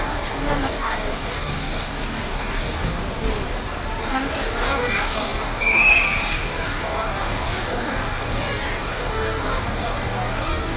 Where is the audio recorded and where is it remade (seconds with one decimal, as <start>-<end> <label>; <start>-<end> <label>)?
0.0-3.0 remade; 3.0-4.0 recorded; 4.0-10.8 remade